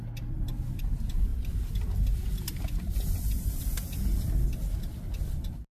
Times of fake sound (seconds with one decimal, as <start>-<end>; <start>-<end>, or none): none